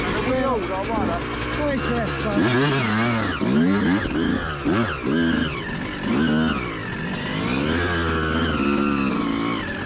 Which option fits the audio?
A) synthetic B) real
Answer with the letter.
B